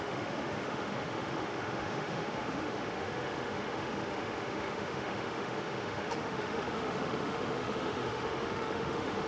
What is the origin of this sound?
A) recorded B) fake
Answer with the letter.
B